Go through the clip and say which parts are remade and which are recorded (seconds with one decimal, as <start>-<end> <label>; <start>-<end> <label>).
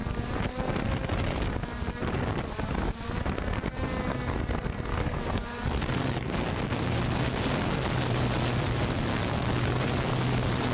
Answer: 0.0-4.9 recorded; 4.9-6.3 remade; 6.3-9.1 recorded; 9.1-9.9 remade; 9.9-10.7 recorded